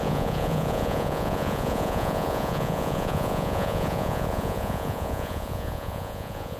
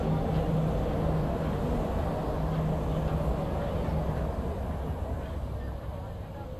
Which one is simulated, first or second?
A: first